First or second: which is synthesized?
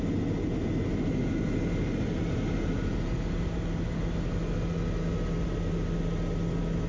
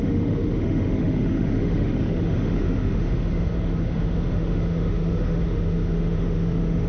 second